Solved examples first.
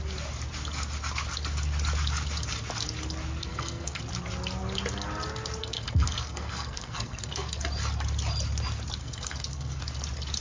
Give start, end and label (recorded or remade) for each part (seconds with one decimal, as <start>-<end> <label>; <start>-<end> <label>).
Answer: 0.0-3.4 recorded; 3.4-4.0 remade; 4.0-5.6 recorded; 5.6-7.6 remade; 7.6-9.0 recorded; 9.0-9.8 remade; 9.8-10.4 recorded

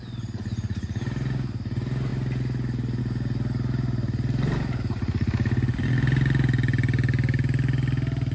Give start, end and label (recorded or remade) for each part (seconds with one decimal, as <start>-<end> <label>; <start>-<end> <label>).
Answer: 0.0-8.3 recorded

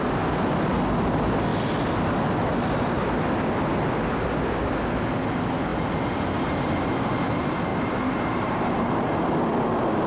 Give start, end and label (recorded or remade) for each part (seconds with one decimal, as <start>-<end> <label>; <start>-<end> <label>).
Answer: 0.0-7.7 recorded; 7.7-8.9 remade; 8.9-10.1 recorded

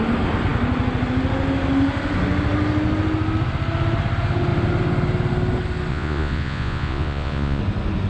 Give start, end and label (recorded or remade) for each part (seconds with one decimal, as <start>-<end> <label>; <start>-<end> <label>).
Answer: 0.0-5.9 recorded; 5.9-7.6 remade; 7.6-8.1 recorded